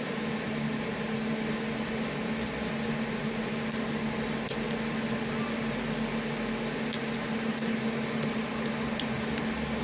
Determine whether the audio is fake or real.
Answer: real